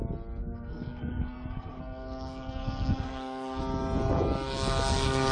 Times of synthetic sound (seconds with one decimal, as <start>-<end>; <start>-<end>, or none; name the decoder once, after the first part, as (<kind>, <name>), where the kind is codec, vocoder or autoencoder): 0.4-3.6 (codec, SNAC)

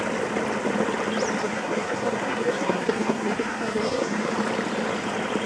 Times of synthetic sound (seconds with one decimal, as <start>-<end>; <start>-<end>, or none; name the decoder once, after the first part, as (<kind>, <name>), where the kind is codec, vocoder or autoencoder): 1.4-4.3 (codec, SNAC)

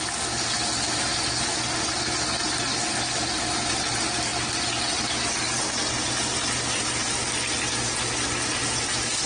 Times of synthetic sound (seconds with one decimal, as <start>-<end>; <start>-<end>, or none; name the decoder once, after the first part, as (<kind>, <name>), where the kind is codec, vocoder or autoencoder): none

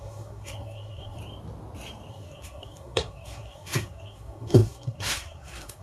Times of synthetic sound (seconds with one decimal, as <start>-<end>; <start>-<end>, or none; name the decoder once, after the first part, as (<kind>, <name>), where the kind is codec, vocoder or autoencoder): 0.0-1.2 (codec, SNAC); 2.1-5.8

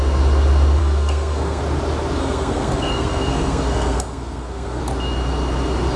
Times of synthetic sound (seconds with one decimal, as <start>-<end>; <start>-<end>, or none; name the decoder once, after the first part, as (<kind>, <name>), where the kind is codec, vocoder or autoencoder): 0.8-1.6 (codec, SNAC); 2.2-4.8

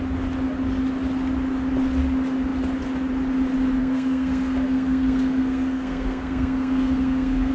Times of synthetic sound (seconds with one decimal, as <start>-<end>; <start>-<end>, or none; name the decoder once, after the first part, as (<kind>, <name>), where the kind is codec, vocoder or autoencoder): 3.8-7.5 (codec, SNAC)

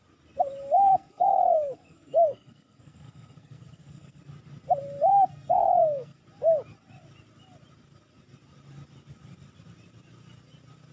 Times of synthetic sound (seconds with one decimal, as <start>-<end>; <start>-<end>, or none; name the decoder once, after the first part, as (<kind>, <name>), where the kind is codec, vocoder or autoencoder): 0.9-4.2 (codec, SNAC); 5.1-6.2

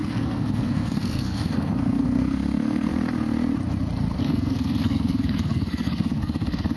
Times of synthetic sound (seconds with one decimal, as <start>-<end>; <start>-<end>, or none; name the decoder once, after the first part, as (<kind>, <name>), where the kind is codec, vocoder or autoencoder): 0.0-2.9 (codec, SNAC); 4.2-6.8